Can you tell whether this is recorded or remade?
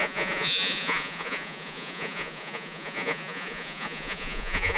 remade